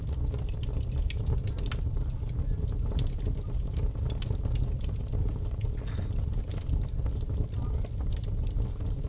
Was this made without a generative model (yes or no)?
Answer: yes